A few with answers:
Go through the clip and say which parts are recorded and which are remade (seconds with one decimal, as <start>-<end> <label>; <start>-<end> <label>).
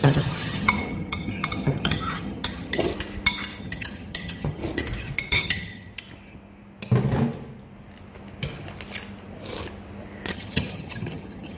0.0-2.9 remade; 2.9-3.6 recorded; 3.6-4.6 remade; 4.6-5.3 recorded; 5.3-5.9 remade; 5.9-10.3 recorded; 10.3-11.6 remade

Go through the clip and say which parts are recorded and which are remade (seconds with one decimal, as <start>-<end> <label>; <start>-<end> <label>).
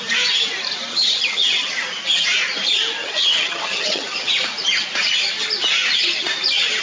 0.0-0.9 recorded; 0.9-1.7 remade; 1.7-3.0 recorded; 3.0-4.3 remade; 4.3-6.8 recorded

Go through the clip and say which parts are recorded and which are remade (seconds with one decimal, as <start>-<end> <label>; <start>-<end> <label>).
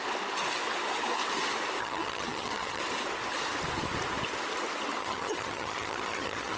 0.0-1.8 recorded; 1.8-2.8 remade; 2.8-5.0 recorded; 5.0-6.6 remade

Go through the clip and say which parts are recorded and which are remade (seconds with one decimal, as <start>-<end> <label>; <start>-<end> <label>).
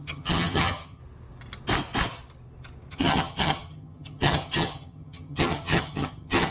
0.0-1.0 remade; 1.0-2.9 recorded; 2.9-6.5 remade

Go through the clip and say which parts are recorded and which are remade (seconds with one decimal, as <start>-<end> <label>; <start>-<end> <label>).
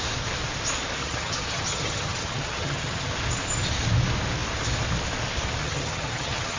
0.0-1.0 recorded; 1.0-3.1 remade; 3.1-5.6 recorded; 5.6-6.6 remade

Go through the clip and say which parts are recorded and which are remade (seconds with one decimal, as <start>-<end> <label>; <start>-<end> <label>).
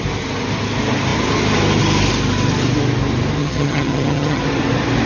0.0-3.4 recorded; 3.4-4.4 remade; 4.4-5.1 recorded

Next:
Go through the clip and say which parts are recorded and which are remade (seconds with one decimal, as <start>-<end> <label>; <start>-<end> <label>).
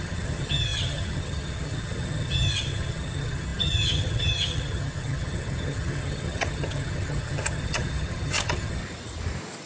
0.0-8.8 remade; 8.8-9.7 recorded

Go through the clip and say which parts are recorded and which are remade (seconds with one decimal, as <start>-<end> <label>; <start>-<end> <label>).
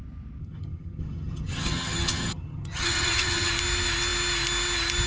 0.0-0.4 recorded; 0.4-3.5 remade; 3.5-5.1 recorded